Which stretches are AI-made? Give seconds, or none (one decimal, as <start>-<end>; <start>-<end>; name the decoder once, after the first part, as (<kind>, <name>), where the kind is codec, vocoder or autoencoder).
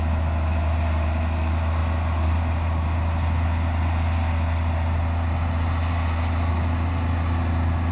none